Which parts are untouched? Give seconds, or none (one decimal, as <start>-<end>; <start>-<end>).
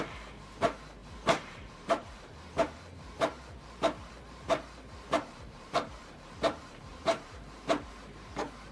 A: none